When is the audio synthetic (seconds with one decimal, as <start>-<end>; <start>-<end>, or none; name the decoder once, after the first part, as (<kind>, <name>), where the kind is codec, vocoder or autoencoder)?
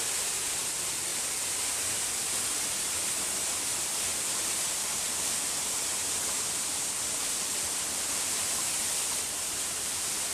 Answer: 1.1-2.3 (vocoder, BigVGAN v2)